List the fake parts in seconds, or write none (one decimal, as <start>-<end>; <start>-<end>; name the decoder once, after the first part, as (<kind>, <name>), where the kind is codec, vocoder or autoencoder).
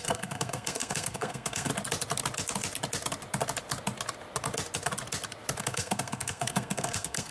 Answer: 0.0-1.7 (codec, SNAC); 5.6-7.3